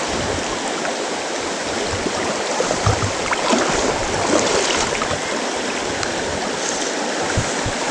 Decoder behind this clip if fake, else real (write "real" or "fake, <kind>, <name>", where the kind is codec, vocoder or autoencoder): real